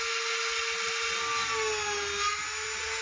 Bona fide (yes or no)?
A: yes